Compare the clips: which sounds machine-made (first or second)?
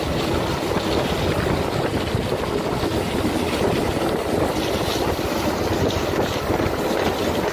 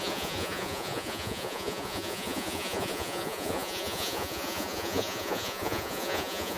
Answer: second